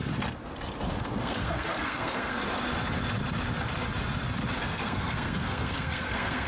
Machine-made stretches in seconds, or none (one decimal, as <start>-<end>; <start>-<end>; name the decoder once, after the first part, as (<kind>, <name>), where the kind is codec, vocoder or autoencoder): 1.0-2.3 (codec, SNAC); 4.6-6.5